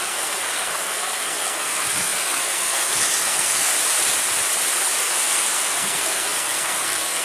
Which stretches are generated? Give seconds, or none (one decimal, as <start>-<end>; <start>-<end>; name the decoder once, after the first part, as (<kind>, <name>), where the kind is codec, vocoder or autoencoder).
0.0-3.7 (codec, SNAC); 5.0-7.2